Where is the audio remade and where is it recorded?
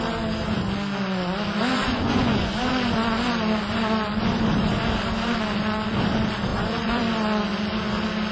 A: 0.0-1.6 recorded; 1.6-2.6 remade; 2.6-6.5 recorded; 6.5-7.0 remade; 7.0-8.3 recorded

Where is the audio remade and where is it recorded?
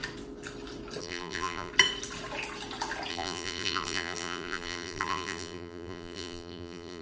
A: 0.0-1.0 recorded; 1.0-1.7 remade; 1.7-3.1 recorded; 3.1-7.0 remade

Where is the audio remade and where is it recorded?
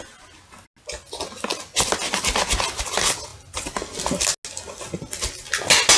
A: 0.0-6.0 recorded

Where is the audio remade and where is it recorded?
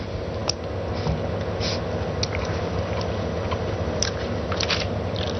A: 0.0-5.4 recorded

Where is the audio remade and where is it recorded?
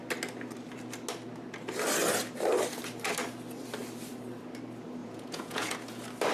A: 0.0-5.0 recorded; 5.0-5.7 remade; 5.7-6.3 recorded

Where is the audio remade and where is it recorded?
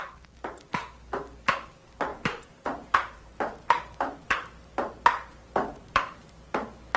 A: 0.0-2.1 recorded; 2.1-3.4 remade; 3.4-5.7 recorded; 5.7-6.3 remade; 6.3-7.0 recorded